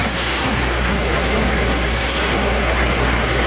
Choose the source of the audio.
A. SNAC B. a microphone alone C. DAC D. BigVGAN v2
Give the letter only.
A